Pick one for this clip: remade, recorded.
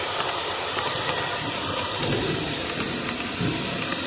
remade